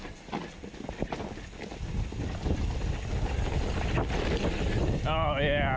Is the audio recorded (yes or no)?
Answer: yes